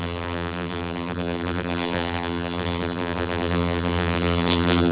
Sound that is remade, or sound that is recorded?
remade